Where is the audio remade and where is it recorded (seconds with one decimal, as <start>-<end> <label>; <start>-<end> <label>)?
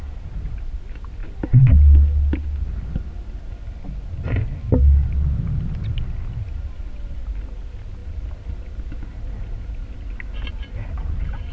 0.0-11.5 recorded